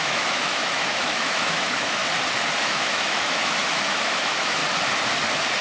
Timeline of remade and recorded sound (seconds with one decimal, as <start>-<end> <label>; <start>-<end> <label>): 0.0-2.0 remade; 2.0-2.6 recorded; 2.6-4.6 remade; 4.6-5.6 recorded